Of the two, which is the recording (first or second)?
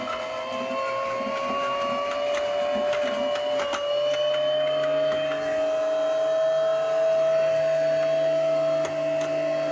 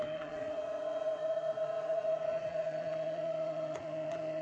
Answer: first